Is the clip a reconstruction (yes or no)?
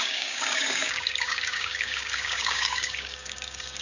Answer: yes